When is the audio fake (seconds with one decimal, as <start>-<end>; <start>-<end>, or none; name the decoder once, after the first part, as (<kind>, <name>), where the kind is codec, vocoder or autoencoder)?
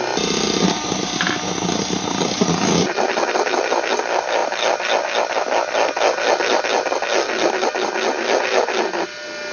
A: none